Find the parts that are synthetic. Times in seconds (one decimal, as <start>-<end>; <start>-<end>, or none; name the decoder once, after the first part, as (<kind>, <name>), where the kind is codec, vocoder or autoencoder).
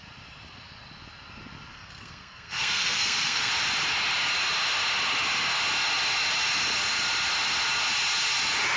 1.7-3.5 (codec, SNAC)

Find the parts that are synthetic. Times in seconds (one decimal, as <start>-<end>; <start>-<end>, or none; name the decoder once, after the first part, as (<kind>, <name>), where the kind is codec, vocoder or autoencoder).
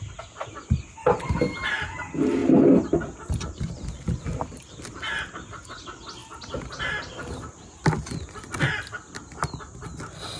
none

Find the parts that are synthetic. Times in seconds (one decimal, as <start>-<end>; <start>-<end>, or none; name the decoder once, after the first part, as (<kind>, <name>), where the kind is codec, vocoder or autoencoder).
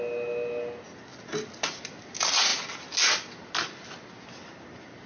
none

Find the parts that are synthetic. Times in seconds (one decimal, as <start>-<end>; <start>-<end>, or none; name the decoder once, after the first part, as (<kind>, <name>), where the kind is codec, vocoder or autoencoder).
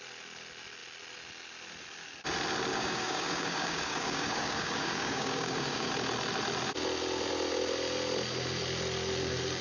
2.7-5.9 (codec, DAC)